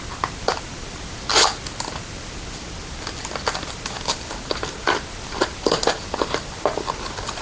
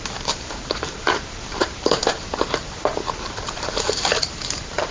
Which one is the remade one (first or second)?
second